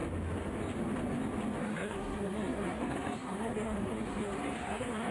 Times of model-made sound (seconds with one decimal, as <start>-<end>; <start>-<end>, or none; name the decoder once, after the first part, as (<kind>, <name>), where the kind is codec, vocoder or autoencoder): 1.6-5.1 (codec, SNAC)